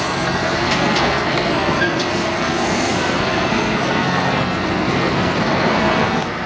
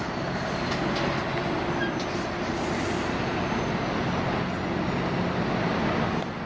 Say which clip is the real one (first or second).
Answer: second